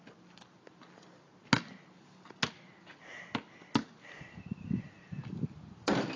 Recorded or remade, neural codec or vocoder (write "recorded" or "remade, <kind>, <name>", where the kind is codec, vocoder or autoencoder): recorded